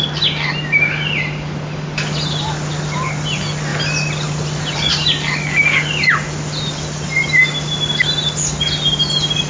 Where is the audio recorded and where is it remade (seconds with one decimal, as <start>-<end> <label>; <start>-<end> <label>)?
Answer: 0.0-9.5 recorded